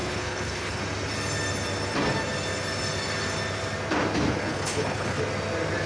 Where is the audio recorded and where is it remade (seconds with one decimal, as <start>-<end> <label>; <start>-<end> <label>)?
0.0-0.8 remade; 0.8-4.4 recorded; 4.4-5.2 remade; 5.2-5.9 recorded